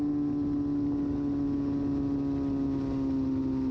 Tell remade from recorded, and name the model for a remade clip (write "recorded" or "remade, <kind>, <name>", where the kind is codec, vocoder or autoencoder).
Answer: recorded